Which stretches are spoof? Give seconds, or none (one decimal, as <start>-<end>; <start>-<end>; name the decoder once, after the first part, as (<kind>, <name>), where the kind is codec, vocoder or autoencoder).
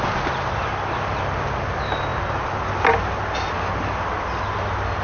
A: none